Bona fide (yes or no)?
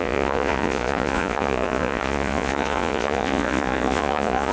no